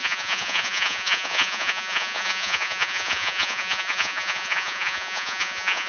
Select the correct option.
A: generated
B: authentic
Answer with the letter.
A